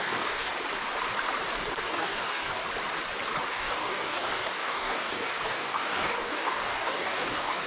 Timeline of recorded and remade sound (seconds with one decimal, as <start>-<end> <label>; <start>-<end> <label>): 0.0-0.5 remade; 0.5-1.8 recorded; 1.8-2.6 remade; 2.6-3.5 recorded; 3.5-7.7 remade